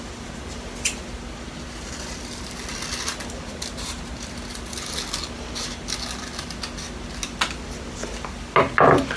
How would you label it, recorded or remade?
recorded